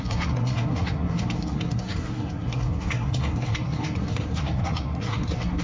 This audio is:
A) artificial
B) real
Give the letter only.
A